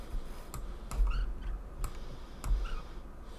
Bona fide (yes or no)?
yes